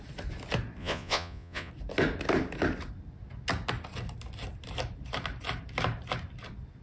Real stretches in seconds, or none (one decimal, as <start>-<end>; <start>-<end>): 0.0-0.8; 1.7-6.8